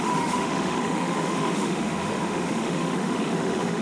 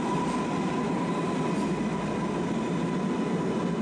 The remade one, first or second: first